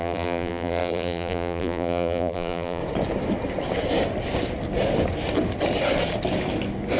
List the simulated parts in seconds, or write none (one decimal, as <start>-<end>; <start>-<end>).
0.0-2.8